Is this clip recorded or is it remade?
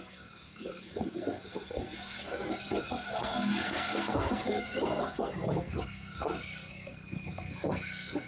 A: remade